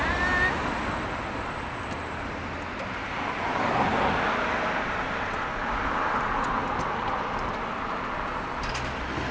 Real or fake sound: real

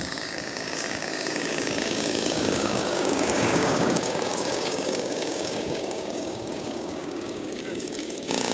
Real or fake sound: fake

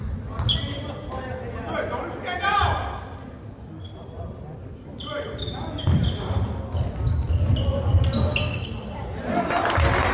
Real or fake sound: real